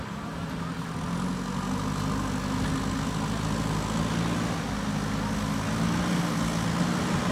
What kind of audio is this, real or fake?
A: real